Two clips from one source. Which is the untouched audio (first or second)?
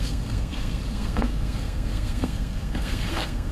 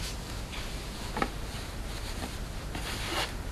second